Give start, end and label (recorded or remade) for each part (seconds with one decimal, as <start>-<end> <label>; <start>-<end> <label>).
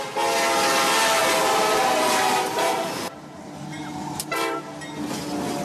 0.0-1.2 recorded; 1.2-4.6 remade; 4.6-5.6 recorded